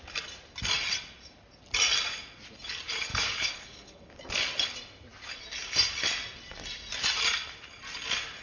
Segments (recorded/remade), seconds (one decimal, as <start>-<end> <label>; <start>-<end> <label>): 0.0-3.1 recorded; 3.1-4.1 remade; 4.1-8.4 recorded